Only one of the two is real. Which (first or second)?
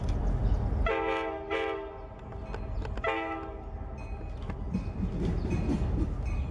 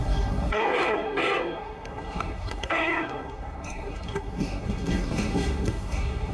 first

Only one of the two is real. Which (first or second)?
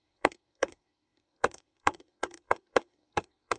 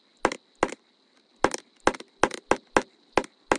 second